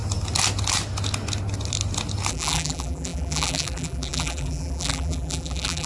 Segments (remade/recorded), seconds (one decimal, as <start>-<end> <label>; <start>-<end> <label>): 0.0-2.3 recorded; 2.3-5.9 remade